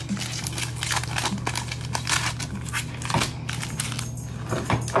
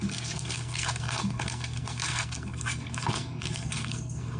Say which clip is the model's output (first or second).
second